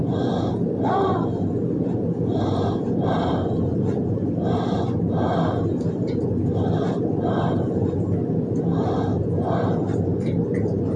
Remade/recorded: remade